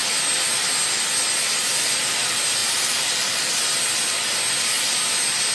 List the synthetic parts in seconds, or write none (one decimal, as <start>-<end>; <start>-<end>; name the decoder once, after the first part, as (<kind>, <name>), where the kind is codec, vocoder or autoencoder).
2.6-3.5 (vocoder, BigVGAN v2)